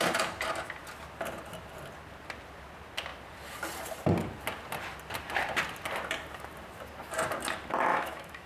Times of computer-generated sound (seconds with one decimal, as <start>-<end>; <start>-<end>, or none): 7.9-8.5